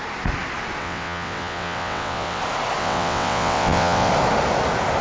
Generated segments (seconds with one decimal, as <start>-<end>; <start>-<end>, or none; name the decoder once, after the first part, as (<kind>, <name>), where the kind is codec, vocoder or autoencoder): 0.8-2.4 (vocoder, WaveNeXt); 2.8-4.1